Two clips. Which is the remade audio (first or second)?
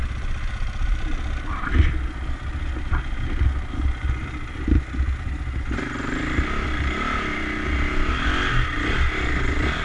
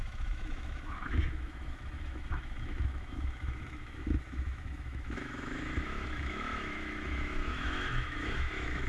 second